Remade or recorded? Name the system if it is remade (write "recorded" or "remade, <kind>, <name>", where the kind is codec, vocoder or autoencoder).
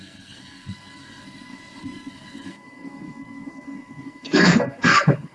remade, codec, SNAC